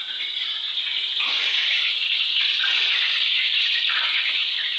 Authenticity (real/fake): fake